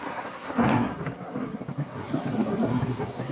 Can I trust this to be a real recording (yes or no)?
no